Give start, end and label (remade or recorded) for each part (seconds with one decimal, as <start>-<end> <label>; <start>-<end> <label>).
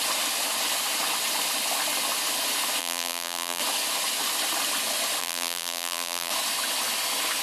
0.0-2.8 recorded; 2.8-3.6 remade; 3.6-5.2 recorded; 5.2-6.3 remade; 6.3-7.4 recorded